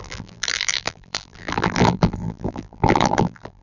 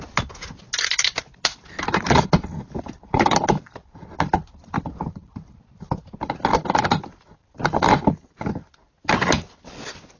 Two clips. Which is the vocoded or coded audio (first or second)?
first